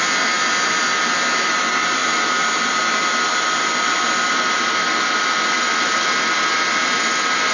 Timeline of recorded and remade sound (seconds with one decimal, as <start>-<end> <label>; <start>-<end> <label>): 0.0-7.5 recorded